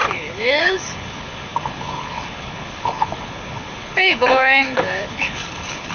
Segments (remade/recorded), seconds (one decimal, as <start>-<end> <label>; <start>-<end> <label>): 0.0-5.9 remade